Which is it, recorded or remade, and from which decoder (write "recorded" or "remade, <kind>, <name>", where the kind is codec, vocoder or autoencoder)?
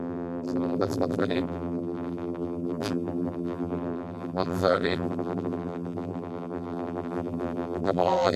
remade, vocoder, BigVGAN v2